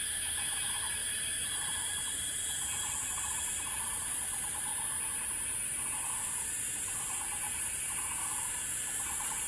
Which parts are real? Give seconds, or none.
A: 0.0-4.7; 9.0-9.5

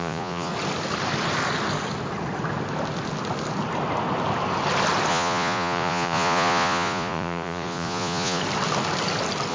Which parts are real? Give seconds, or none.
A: 0.5-5.1; 8.4-9.5

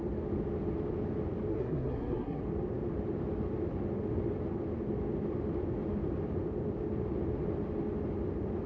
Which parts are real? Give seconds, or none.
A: 0.0-1.5; 2.4-8.7

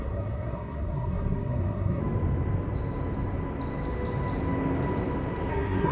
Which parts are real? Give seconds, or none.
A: 2.0-5.5

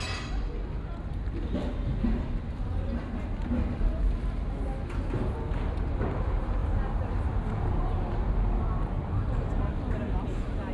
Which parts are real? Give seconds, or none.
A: 0.0-10.7

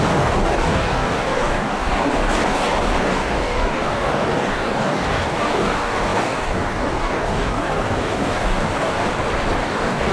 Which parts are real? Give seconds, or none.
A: 9.1-9.6

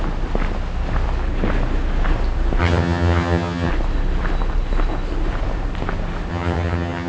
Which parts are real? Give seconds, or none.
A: 0.0-2.6; 3.7-6.3

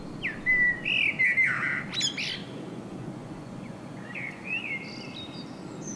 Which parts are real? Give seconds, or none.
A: 0.0-2.4; 4.7-6.0